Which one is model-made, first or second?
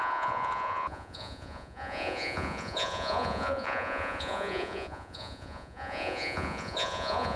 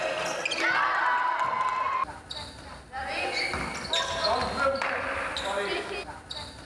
first